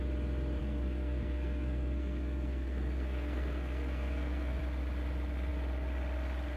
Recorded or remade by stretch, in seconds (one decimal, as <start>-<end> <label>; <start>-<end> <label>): 0.0-0.6 recorded; 0.6-4.6 remade; 4.6-6.6 recorded

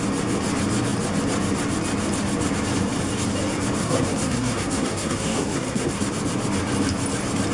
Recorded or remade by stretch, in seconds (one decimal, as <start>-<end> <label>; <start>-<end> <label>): 0.0-3.8 recorded; 3.8-6.0 remade; 6.0-7.5 recorded